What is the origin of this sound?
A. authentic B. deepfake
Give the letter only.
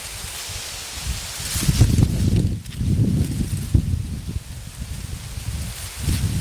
A